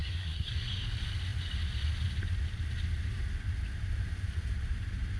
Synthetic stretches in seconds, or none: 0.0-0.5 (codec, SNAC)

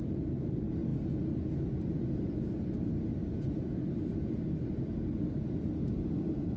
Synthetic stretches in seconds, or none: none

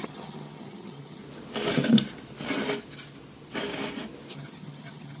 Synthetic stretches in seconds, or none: 0.0-1.2 (vocoder, HiFi-GAN); 4.3-5.2

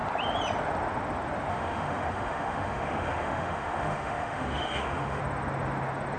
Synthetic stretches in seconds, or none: 1.5-5.2 (autoencoder, DAC-VAE)